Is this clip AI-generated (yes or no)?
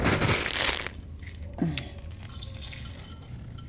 no